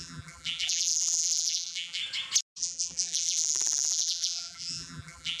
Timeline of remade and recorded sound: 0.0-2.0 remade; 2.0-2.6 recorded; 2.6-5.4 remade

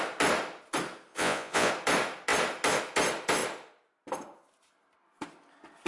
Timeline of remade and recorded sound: 0.0-1.1 recorded; 1.1-1.7 remade; 1.7-5.9 recorded

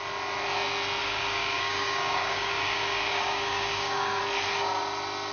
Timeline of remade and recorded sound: 0.0-1.0 recorded; 1.0-4.2 remade; 4.2-5.3 recorded

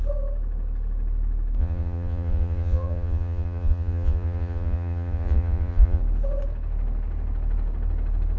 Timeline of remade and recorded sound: 0.0-1.6 recorded; 1.6-6.0 remade; 6.0-8.4 recorded

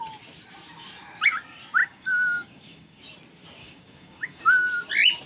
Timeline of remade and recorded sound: 0.0-1.8 recorded; 1.8-3.0 remade; 3.0-3.6 recorded; 3.6-4.4 remade; 4.4-5.3 recorded

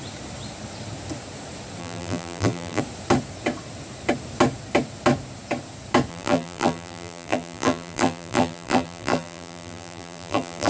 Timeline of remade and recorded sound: 0.0-1.8 recorded; 1.8-2.8 remade; 2.8-6.1 recorded; 6.1-10.7 remade

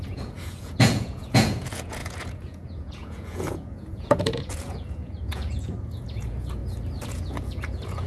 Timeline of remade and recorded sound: 0.0-6.6 remade; 6.6-7.1 recorded; 7.1-8.1 remade

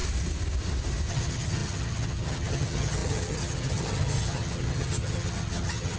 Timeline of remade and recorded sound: 0.0-1.1 recorded; 1.1-6.0 remade